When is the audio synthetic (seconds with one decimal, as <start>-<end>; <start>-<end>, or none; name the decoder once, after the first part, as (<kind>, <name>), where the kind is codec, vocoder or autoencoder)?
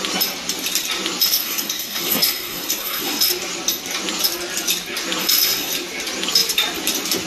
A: 1.3-3.3 (codec, SNAC); 5.2-5.7